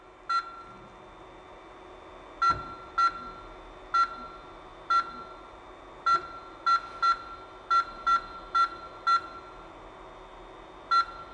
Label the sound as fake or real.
real